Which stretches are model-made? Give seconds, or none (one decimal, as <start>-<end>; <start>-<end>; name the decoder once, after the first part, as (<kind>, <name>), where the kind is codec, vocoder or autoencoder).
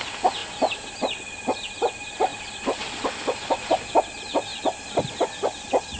none